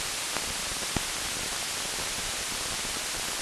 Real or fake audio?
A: real